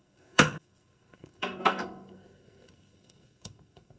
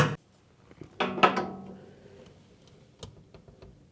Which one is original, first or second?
second